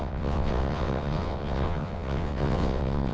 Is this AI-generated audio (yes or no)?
yes